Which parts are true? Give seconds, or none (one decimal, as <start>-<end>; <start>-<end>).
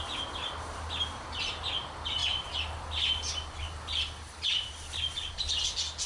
0.0-6.1